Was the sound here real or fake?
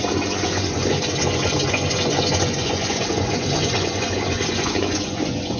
fake